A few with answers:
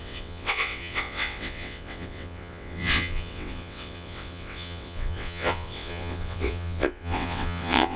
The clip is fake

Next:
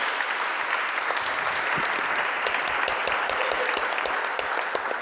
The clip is real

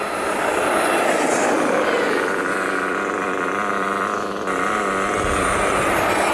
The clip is real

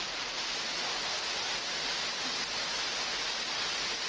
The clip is real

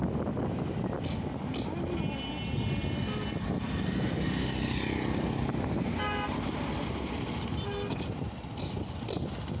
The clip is real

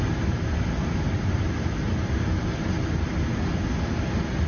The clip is real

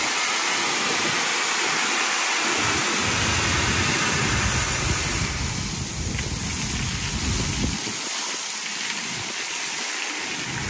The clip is real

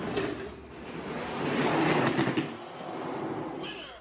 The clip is real